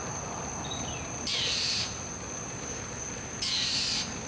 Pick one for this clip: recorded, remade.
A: recorded